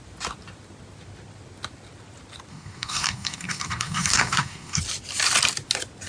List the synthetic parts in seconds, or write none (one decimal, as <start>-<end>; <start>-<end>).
2.5-4.8